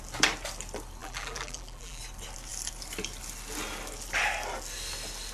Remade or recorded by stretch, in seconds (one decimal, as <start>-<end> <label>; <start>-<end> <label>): 0.0-1.0 recorded; 1.0-2.0 remade; 2.0-5.3 recorded